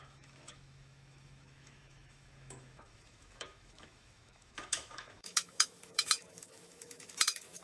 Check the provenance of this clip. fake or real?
fake